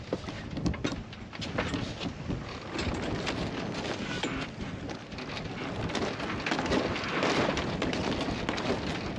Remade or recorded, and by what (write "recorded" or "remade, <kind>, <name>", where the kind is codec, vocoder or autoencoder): recorded